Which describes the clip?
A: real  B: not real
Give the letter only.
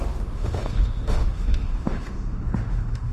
B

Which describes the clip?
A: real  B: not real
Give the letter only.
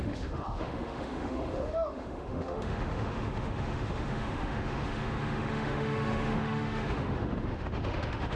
B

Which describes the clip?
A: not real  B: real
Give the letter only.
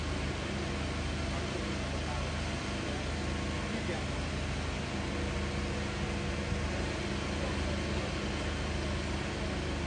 B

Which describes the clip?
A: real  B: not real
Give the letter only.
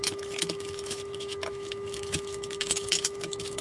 B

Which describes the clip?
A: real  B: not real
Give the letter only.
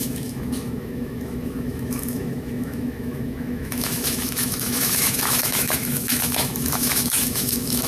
B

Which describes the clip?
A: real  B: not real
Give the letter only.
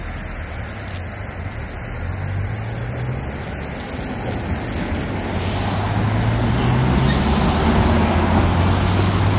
A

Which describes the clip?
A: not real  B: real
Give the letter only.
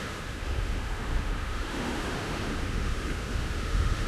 A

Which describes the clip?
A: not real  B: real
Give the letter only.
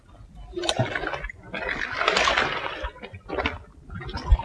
B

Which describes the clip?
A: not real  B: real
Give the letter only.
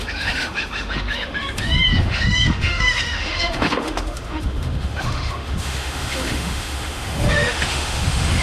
A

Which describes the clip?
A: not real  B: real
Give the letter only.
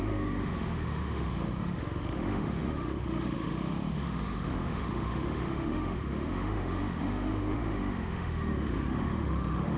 A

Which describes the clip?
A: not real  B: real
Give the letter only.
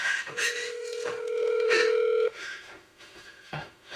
A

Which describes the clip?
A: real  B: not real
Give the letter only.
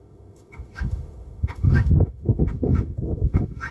B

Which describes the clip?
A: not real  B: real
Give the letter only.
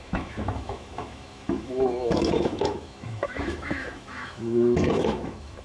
A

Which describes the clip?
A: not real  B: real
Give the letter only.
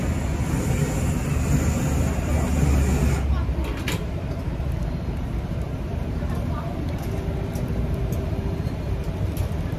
B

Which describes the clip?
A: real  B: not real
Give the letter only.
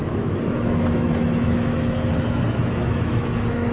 B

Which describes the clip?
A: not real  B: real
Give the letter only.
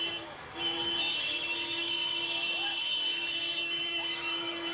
A